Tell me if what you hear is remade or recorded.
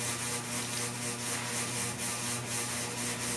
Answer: recorded